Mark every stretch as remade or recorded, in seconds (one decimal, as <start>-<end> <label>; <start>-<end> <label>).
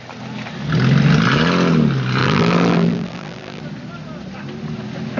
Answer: 0.0-2.2 recorded; 2.2-3.6 remade; 3.6-5.2 recorded